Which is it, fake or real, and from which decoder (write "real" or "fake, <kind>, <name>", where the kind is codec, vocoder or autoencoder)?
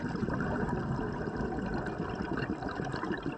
real